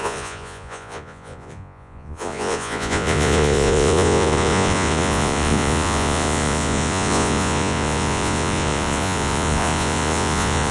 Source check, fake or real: fake